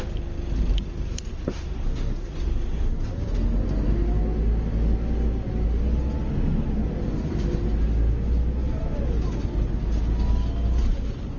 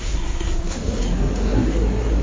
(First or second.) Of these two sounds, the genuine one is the first